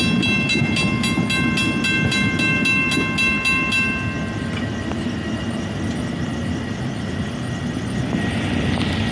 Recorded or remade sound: recorded